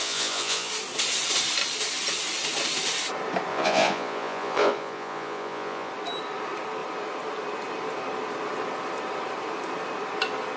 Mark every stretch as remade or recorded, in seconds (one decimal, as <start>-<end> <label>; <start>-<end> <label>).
0.0-0.7 remade; 0.7-3.5 recorded; 3.5-5.9 remade; 5.9-10.6 recorded